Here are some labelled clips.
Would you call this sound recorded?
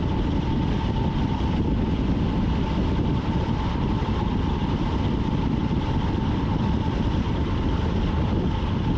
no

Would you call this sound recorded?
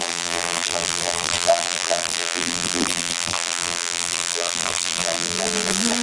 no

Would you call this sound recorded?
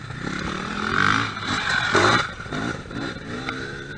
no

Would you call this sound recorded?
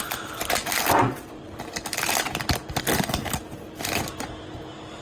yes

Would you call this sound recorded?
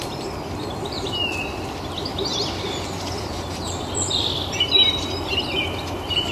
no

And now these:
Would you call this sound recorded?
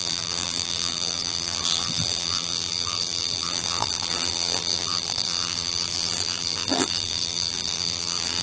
no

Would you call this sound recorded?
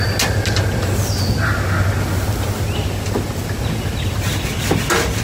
yes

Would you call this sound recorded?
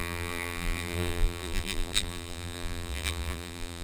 no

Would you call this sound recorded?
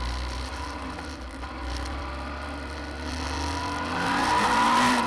yes